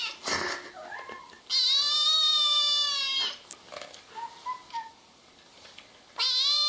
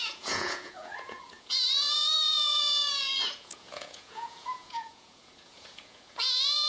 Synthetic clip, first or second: second